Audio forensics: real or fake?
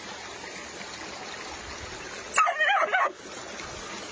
real